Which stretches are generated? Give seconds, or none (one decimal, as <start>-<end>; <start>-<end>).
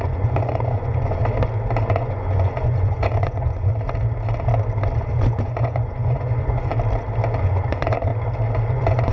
0.0-1.2; 1.9-3.7; 5.0-6.7; 7.4-8.1; 8.7-9.1